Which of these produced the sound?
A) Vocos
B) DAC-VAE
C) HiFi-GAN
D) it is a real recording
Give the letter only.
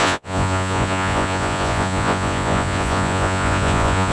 A